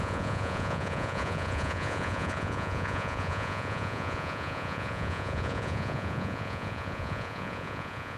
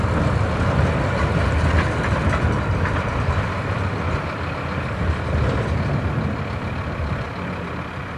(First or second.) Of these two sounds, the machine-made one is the first